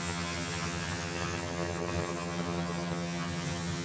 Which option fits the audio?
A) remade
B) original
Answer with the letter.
A